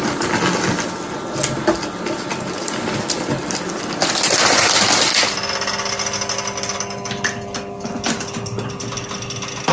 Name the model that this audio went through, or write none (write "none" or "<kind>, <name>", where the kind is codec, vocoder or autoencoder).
none